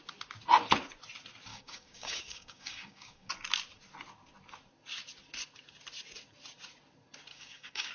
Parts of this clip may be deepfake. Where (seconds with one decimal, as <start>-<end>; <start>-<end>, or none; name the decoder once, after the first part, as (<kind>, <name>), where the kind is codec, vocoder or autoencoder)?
1.5-3.3 (codec, DAC); 7.3-7.9